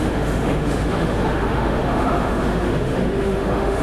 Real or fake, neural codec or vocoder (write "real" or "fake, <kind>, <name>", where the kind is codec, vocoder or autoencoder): fake, autoencoder, DAC-VAE